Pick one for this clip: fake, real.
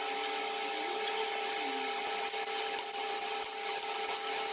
real